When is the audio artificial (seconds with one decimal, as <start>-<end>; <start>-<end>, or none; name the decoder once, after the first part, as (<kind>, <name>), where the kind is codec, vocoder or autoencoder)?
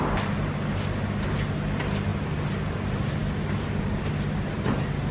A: none